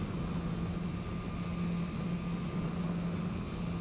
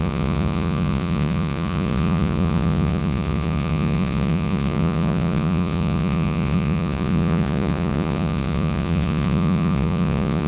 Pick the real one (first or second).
first